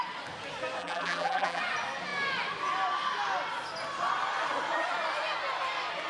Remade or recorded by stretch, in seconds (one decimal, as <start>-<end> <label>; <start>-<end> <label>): 0.0-0.8 recorded; 0.8-1.6 remade; 1.6-6.1 recorded